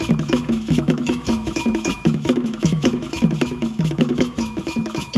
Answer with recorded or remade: remade